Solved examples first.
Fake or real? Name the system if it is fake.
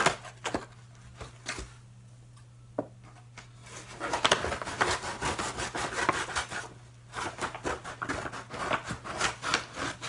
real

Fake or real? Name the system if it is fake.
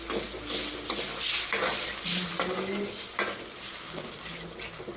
real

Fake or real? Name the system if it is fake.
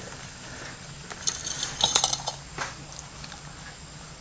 real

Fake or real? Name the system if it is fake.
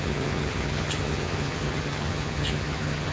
fake, vocoder, HiFi-GAN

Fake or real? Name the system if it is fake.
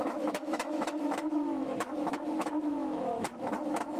fake, autoencoder, DAC-VAE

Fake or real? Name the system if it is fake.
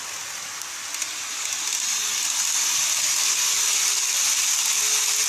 real